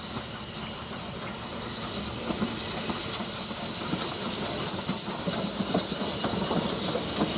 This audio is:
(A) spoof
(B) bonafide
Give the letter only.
B